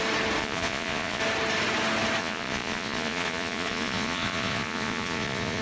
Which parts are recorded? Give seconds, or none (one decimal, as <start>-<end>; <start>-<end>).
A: 0.0-0.4; 1.2-2.2